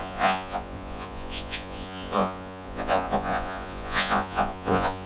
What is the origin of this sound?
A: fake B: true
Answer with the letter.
A